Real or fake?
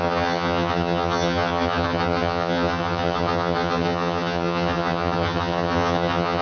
fake